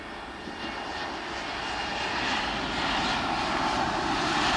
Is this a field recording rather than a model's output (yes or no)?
yes